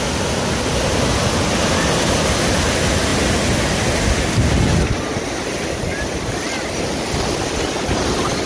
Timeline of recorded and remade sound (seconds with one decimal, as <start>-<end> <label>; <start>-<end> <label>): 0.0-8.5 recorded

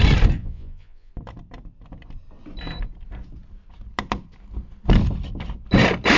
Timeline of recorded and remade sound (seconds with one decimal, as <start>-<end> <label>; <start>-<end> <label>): 0.0-0.4 recorded; 0.4-1.1 remade; 1.1-6.2 recorded

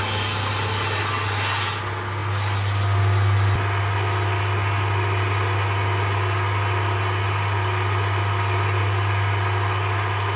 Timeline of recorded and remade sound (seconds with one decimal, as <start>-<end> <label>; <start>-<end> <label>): 0.0-10.4 recorded

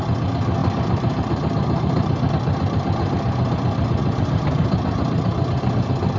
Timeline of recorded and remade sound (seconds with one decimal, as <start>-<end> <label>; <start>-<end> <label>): 0.0-0.6 recorded; 0.6-2.3 remade; 2.3-4.0 recorded; 4.0-5.6 remade; 5.6-6.2 recorded

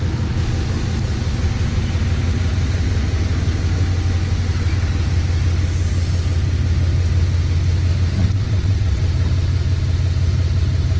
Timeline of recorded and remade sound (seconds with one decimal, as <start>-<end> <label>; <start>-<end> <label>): 0.0-8.2 recorded; 8.2-9.0 remade; 9.0-11.0 recorded

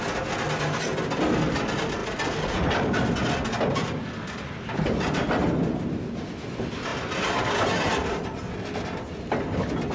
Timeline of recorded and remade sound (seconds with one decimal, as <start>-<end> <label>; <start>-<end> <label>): 0.0-9.9 recorded